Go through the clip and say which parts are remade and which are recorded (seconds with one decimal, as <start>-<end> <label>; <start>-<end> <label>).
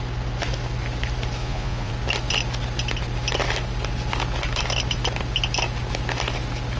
0.0-1.4 recorded; 1.4-1.9 remade; 1.9-6.8 recorded